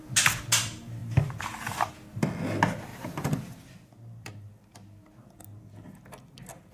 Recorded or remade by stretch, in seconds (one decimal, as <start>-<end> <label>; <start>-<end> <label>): 0.0-1.0 recorded; 1.0-1.9 remade; 1.9-2.9 recorded; 2.9-5.4 remade; 5.4-6.7 recorded